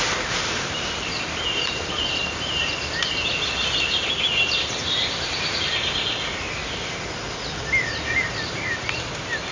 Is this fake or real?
real